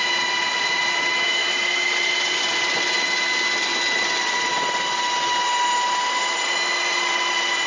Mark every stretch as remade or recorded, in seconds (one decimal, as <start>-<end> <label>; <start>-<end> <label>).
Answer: 0.0-7.7 recorded